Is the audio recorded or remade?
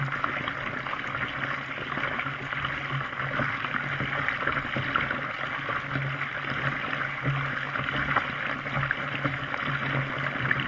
recorded